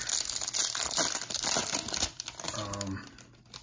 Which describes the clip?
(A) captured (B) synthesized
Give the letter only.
A